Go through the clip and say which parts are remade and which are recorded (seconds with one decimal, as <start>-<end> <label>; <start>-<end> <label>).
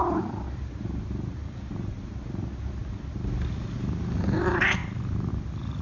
0.0-5.8 recorded